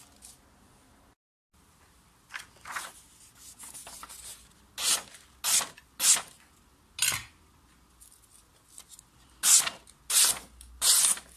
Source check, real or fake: real